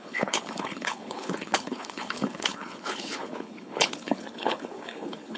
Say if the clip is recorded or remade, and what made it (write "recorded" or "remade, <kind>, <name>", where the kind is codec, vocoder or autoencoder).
remade, codec, HILCodec